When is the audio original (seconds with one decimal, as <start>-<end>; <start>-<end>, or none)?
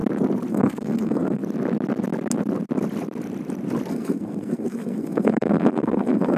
0.0-0.5; 1.4-3.9